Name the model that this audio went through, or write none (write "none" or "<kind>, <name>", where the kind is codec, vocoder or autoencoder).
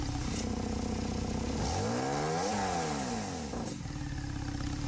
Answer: none